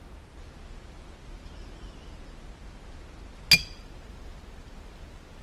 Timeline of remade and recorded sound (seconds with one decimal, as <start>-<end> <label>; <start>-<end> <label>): 0.0-5.4 recorded